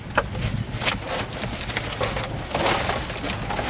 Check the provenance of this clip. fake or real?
real